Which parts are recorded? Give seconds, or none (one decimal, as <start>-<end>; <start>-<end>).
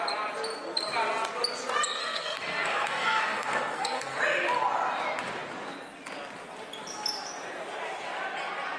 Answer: 0.0-2.0; 4.2-8.8